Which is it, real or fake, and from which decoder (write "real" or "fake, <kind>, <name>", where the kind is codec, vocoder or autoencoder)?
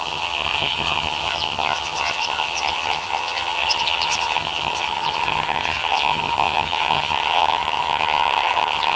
fake, vocoder, HiFi-GAN